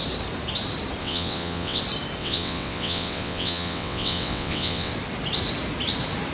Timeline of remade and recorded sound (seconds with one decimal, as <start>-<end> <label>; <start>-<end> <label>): 0.0-1.0 recorded; 1.0-1.8 remade; 1.8-2.2 recorded; 2.2-4.9 remade; 4.9-6.3 recorded